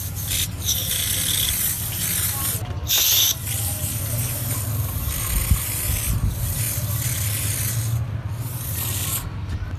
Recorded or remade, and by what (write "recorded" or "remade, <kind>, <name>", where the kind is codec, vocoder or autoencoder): recorded